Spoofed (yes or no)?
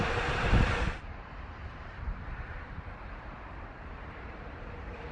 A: yes